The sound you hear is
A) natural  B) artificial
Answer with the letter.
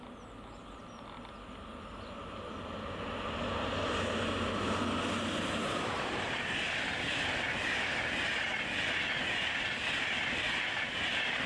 A